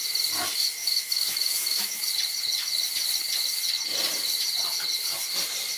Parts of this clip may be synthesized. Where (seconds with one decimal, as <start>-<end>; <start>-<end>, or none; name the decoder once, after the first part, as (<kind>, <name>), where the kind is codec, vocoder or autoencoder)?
0.8-2.1 (autoencoder, DAC-VAE)